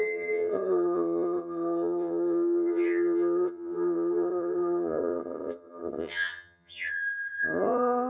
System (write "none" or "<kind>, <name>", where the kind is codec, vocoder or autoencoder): vocoder, HiFi-GAN